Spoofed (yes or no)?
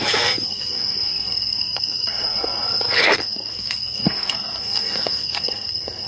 yes